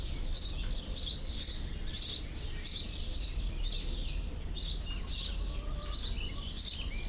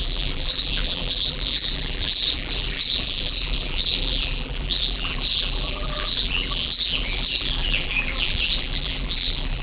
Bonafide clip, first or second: first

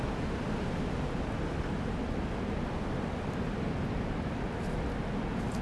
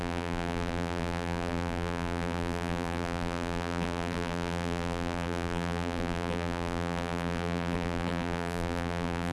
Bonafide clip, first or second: first